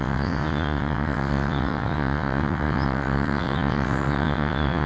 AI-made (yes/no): yes